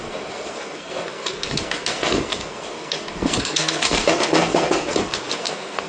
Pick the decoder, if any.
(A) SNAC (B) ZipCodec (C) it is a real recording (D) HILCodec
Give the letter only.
A